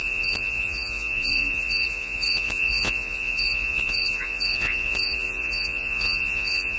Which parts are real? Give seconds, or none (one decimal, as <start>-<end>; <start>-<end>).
none